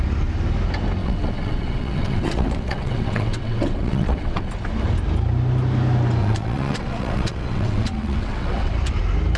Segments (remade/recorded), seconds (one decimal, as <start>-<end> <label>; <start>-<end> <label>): 0.0-1.0 recorded; 1.0-4.5 remade; 4.5-6.2 recorded; 6.2-8.7 remade; 8.7-9.4 recorded

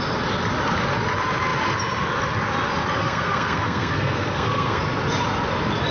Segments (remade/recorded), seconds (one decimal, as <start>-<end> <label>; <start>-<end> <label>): 0.0-3.0 recorded; 3.0-4.8 remade; 4.8-5.9 recorded

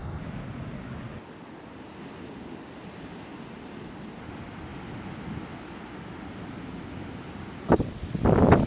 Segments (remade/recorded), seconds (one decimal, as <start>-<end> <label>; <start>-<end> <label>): 0.0-8.7 recorded

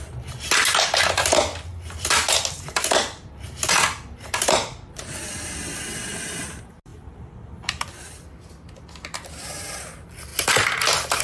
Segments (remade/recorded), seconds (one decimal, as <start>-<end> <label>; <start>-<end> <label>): 0.0-6.9 recorded; 6.9-7.9 remade; 7.9-10.3 recorded; 10.3-11.2 remade

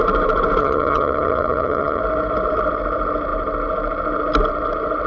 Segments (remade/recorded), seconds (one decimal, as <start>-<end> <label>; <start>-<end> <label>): 0.0-0.6 recorded; 0.6-2.0 remade; 2.0-5.1 recorded